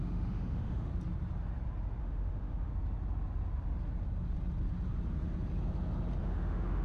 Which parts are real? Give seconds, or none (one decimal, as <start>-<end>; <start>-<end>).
0.9-2.0; 2.7-6.2